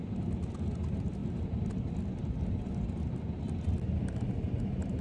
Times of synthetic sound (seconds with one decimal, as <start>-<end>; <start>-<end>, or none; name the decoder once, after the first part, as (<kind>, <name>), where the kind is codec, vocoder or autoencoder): none